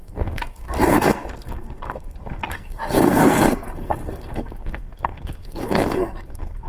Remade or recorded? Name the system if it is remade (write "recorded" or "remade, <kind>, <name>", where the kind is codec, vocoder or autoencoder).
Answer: remade, codec, SNAC